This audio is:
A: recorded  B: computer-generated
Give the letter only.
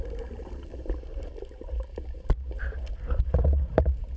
B